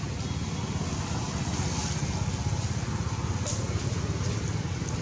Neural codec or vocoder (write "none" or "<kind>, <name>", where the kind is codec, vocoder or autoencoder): none